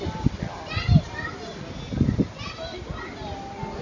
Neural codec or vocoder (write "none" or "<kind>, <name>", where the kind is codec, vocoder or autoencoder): none